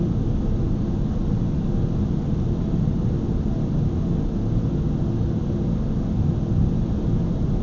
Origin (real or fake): real